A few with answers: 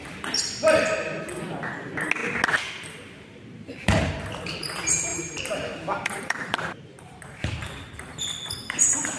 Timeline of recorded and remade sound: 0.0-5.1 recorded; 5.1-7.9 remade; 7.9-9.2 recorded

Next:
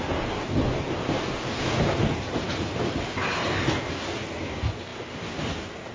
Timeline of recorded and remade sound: 0.0-5.9 recorded

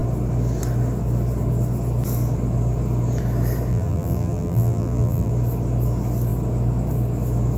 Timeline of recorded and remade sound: 0.0-3.7 recorded; 3.7-5.3 remade; 5.3-7.6 recorded

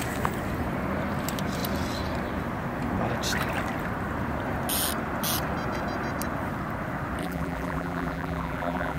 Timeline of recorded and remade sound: 0.0-7.2 recorded; 7.2-9.0 remade

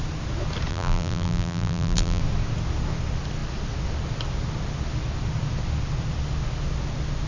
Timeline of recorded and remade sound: 0.0-0.7 recorded; 0.7-2.2 remade; 2.2-7.3 recorded